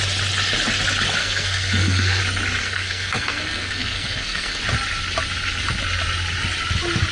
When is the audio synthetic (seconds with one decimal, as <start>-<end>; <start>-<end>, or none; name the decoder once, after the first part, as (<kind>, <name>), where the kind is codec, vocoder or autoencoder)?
1.2-2.2 (codec, SNAC); 2.6-4.6